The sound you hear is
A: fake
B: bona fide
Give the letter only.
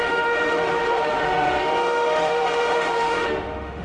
A